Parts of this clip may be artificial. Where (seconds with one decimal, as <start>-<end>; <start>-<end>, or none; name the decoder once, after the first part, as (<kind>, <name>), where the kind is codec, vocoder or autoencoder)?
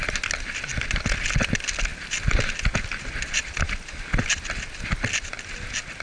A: none